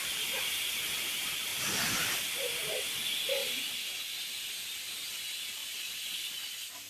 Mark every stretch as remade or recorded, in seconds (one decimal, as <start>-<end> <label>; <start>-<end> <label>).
0.0-1.5 recorded; 1.5-2.3 remade; 2.3-3.4 recorded; 3.4-4.6 remade; 4.6-5.6 recorded; 5.6-6.2 remade; 6.2-6.9 recorded